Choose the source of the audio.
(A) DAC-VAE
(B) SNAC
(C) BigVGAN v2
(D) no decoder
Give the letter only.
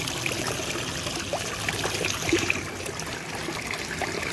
D